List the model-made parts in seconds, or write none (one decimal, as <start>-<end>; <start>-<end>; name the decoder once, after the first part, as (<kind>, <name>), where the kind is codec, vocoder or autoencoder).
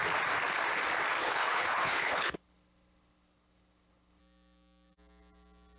1.2-4.2 (codec, HILCodec)